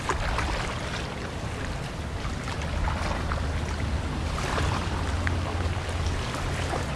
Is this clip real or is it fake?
real